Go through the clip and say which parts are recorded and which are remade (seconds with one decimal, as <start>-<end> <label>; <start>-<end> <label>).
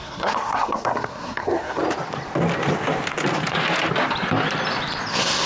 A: 0.0-1.8 remade; 1.8-5.1 recorded; 5.1-5.5 remade